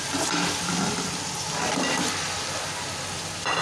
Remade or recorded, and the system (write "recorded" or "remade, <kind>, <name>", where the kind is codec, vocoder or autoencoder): recorded